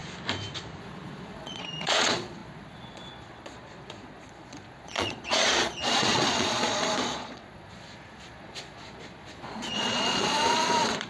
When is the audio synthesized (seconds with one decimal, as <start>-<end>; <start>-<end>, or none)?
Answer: 0.8-11.1